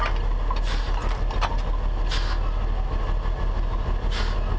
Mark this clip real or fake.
real